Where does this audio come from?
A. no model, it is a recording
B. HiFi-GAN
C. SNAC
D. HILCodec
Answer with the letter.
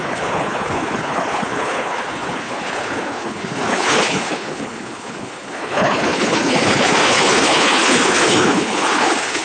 D